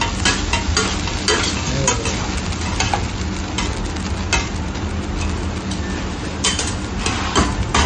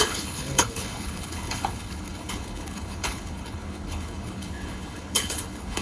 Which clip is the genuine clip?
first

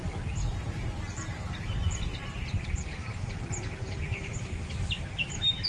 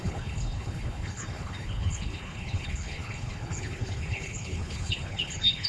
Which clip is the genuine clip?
first